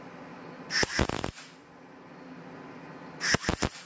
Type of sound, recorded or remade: recorded